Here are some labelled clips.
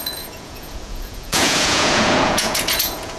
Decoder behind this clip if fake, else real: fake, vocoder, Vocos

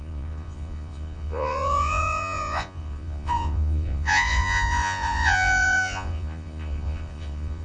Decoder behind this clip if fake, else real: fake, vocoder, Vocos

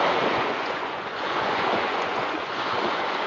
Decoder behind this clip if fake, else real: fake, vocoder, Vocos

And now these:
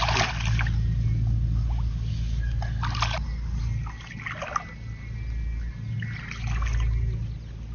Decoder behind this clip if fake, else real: real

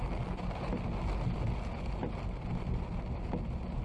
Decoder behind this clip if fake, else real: real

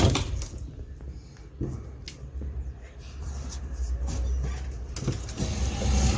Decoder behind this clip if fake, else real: real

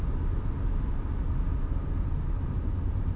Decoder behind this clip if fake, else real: real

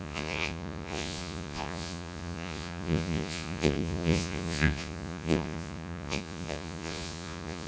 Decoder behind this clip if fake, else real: fake, vocoder, Vocos